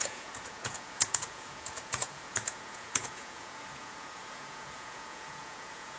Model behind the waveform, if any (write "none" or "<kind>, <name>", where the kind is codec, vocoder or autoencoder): vocoder, Vocos